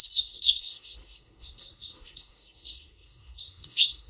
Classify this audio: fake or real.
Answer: fake